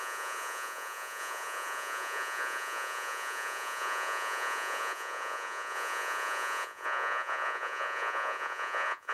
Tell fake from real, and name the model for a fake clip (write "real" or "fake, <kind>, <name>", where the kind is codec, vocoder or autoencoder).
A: fake, vocoder, Vocos